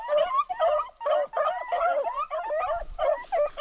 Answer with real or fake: fake